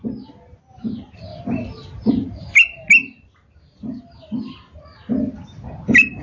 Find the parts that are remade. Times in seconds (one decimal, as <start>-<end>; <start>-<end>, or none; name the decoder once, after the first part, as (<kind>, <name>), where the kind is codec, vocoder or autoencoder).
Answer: none